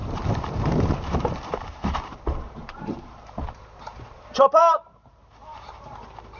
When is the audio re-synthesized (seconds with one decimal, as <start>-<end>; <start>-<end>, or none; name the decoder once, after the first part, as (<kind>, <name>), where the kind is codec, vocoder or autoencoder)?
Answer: 0.0-6.4 (vocoder, BigVGAN v2)